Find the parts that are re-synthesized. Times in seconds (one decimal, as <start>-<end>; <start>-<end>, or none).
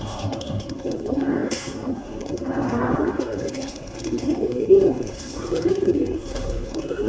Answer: 0.0-7.1